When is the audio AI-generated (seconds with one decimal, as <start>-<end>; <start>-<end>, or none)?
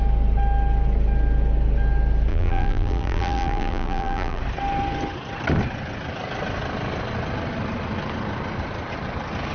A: 2.3-4.4